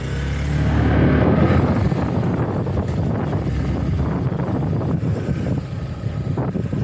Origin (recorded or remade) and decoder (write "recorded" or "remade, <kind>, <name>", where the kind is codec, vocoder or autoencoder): recorded